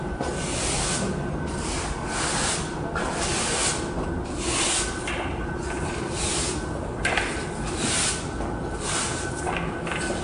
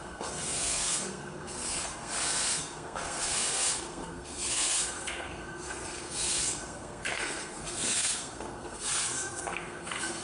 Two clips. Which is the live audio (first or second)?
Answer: first